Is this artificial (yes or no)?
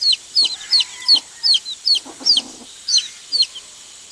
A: no